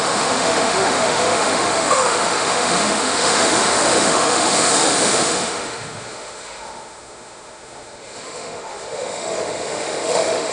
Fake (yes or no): yes